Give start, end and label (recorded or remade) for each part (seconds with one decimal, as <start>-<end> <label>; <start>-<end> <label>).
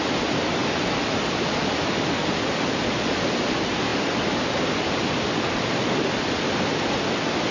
0.0-7.5 recorded